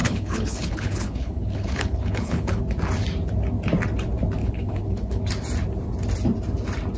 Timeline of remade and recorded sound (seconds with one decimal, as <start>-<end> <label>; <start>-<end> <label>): 0.0-2.6 remade; 2.6-4.4 recorded; 4.4-5.2 remade; 5.2-7.0 recorded